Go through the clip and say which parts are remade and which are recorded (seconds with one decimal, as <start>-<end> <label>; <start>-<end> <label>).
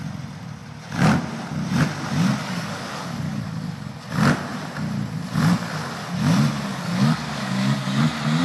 0.0-2.4 recorded; 2.4-3.9 remade; 3.9-6.7 recorded; 6.7-8.0 remade; 8.0-8.4 recorded